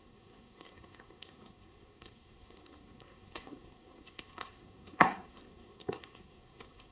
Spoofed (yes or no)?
yes